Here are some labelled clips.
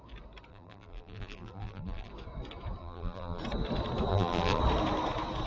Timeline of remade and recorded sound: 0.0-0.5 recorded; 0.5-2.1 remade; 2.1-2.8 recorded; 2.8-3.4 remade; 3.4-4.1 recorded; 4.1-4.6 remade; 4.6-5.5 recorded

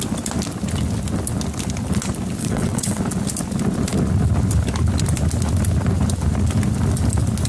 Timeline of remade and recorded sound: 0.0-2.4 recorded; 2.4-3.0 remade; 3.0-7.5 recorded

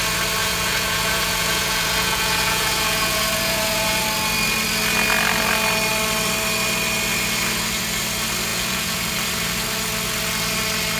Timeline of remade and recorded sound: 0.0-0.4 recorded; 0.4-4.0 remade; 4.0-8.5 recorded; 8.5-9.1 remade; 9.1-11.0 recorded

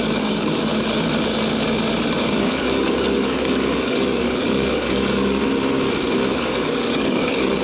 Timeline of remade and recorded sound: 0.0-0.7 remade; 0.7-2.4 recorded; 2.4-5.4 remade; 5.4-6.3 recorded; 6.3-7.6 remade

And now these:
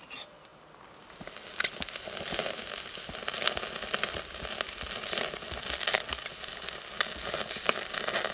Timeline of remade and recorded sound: 0.0-8.3 recorded

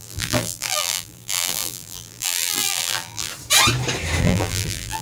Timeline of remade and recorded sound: 0.0-3.3 remade; 3.3-4.2 recorded; 4.2-5.0 remade